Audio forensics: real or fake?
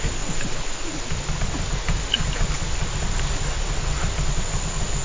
real